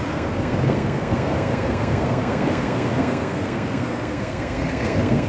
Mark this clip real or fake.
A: fake